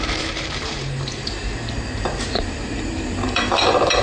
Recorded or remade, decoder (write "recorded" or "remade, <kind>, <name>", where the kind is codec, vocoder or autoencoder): remade, vocoder, BigVGAN v2